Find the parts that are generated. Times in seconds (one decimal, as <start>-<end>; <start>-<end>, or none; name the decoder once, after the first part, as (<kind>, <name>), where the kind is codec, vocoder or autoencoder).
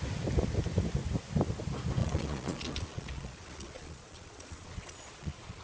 2.0-5.6 (vocoder, Vocos)